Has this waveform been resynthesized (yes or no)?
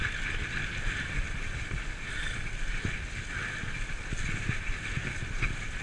no